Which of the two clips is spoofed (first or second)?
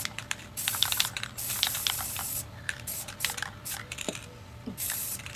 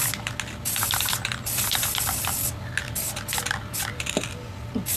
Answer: first